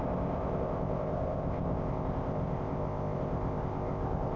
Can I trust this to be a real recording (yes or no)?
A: no